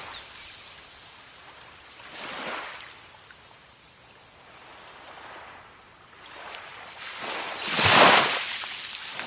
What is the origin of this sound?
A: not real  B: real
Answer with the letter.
A